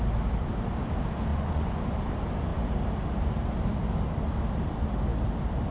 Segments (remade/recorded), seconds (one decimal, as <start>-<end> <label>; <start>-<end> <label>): 0.0-1.3 recorded; 1.3-1.8 remade; 1.8-5.7 recorded